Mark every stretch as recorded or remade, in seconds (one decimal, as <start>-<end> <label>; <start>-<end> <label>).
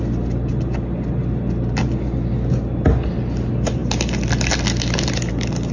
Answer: 0.0-5.7 recorded